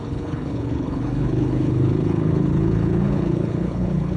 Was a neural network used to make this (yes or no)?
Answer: yes